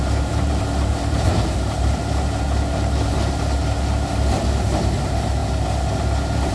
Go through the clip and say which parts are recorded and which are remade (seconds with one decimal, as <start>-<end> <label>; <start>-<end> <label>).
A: 0.0-2.0 remade; 2.0-5.0 recorded; 5.0-5.4 remade; 5.4-6.5 recorded